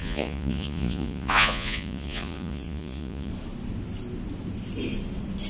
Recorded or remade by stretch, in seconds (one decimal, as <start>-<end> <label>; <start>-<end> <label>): 0.0-3.3 remade; 3.3-5.5 recorded